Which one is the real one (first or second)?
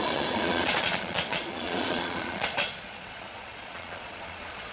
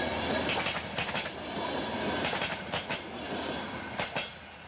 second